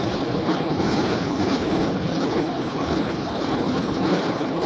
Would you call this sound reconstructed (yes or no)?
yes